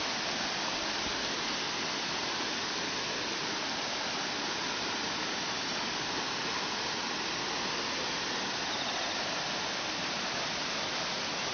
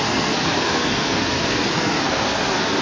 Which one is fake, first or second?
second